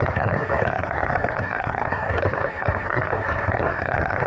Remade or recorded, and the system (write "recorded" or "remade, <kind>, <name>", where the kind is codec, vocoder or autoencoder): remade, codec, SNAC